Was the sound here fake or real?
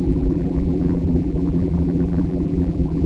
fake